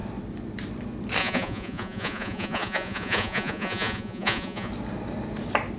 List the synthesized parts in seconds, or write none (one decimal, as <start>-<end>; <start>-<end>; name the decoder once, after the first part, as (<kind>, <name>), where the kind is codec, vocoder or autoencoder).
1.2-4.7 (vocoder, Vocos)